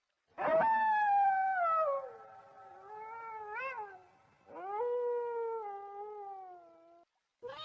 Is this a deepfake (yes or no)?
no